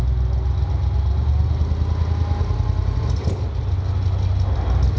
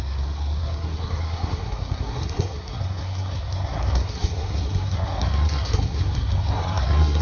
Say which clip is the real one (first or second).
first